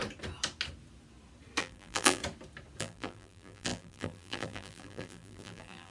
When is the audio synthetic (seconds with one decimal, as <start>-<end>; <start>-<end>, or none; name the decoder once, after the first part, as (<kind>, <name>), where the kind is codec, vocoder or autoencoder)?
1.6-2.2 (vocoder, BigVGAN v2); 2.8-5.9